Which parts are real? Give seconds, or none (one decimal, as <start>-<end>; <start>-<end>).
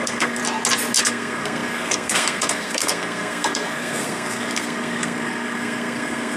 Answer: 0.4-1.0